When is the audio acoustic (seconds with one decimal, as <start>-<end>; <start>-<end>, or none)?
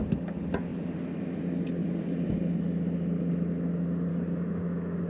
0.0-4.1